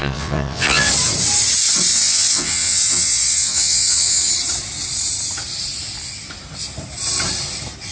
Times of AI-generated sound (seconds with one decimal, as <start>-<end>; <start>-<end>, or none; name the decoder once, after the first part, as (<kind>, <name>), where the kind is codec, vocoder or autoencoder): 0.0-0.9 (vocoder, WaveNeXt); 1.9-4.3